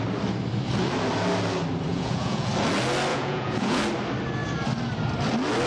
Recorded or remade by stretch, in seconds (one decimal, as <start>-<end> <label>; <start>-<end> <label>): 0.0-1.9 recorded; 1.9-2.5 remade; 2.5-3.1 recorded; 3.1-3.8 remade; 3.8-5.7 recorded